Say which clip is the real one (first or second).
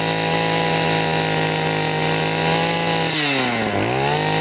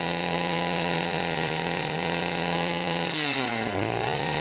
first